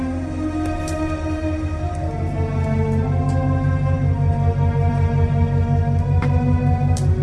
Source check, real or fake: real